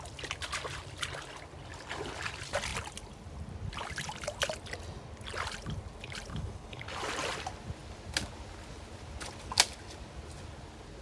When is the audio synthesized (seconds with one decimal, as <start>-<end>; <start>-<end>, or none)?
6.3-7.0